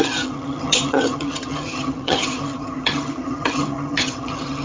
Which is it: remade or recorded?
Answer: remade